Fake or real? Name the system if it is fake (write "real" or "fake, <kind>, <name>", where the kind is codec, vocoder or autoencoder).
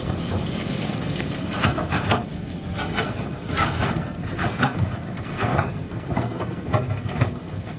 fake, codec, SNAC